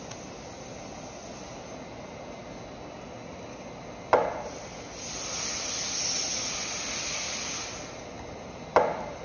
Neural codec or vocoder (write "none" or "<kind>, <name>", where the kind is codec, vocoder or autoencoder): none